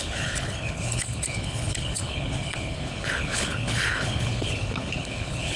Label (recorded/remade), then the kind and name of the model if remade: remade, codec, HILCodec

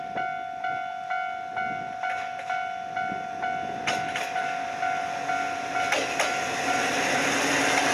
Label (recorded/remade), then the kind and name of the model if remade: recorded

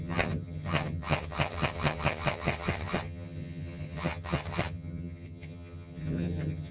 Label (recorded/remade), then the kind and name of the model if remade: remade, vocoder, HiFi-GAN